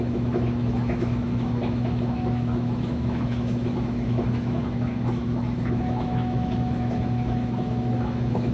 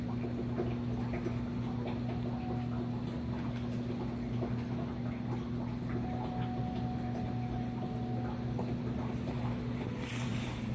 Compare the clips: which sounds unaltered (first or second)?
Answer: second